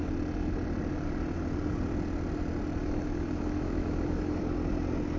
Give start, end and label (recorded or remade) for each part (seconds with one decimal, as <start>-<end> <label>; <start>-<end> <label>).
0.0-2.8 recorded; 2.8-4.4 remade; 4.4-5.2 recorded